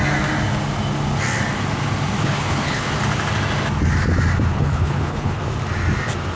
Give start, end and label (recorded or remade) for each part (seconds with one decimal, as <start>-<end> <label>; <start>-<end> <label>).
0.0-2.2 recorded; 2.2-2.9 remade; 2.9-4.5 recorded; 4.5-5.4 remade; 5.4-6.4 recorded